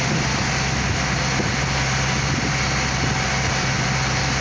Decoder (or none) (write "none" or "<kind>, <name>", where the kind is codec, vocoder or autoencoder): vocoder, BigVGAN v2